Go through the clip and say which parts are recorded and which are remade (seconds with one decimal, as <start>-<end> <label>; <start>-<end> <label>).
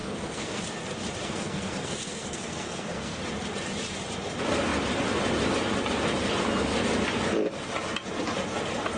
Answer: 0.0-0.6 remade; 0.6-1.2 recorded; 1.2-3.2 remade; 3.2-9.0 recorded